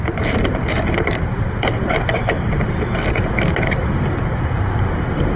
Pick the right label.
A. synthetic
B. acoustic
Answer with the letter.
A